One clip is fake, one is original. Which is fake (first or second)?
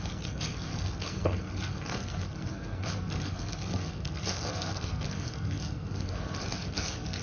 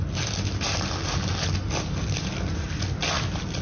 first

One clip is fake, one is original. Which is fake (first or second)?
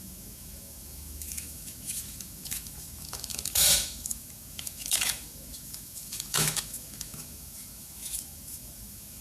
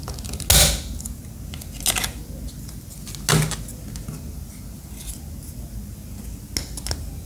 first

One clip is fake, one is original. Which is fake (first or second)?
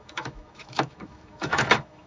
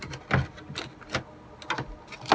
first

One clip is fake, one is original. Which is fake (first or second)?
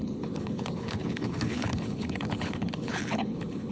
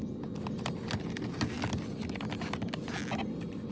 first